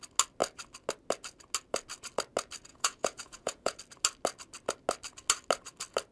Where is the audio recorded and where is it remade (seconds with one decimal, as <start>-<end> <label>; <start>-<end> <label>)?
0.0-2.7 recorded; 2.7-3.8 remade; 3.8-6.1 recorded